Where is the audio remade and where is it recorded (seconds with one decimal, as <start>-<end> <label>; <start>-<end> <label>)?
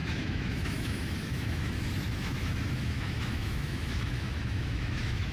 0.0-5.3 remade